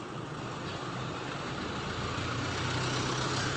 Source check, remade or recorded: recorded